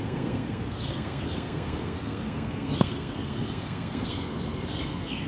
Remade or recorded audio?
remade